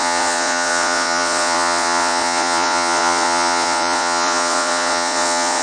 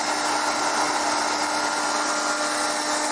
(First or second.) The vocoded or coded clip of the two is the first